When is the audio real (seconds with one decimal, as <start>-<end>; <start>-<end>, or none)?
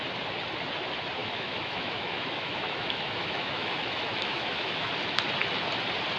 0.0-1.2; 4.9-6.2